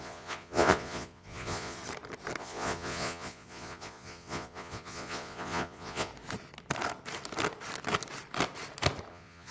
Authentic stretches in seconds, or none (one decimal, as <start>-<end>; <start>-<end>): 1.8-2.4; 6.1-9.1

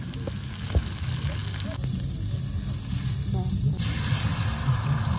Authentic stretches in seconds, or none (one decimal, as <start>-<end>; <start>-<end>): 0.0-5.2

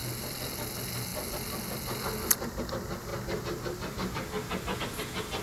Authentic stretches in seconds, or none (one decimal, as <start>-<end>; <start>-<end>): 0.0-5.4

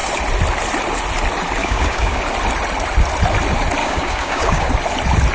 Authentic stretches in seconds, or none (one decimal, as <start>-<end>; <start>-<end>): 0.0-1.6; 2.2-3.8; 4.7-5.3

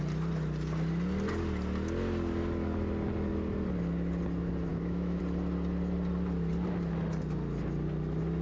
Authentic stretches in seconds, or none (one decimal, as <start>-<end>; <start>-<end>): 0.0-4.7; 5.2-8.4

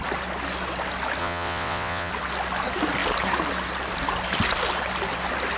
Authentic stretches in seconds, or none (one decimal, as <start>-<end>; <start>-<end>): 0.0-1.2; 2.1-5.6

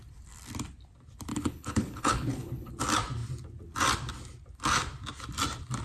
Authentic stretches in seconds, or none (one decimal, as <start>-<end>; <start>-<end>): 0.0-1.3; 2.7-5.8

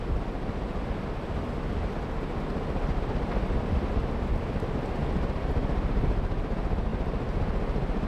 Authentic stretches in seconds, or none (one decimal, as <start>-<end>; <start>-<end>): 0.0-8.1